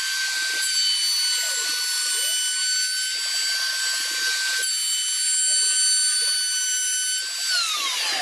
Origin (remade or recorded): recorded